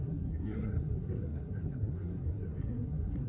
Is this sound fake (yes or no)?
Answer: yes